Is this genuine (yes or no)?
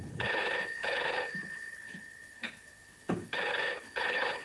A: no